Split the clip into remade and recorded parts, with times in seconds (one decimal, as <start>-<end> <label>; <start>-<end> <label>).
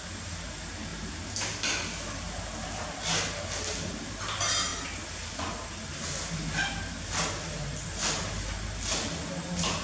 0.0-9.8 recorded